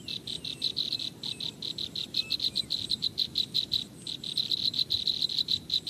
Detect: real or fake real